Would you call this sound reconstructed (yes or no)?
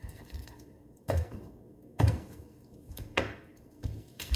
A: yes